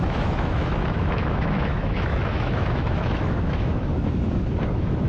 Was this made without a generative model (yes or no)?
no